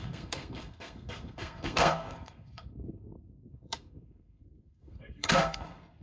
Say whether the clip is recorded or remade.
remade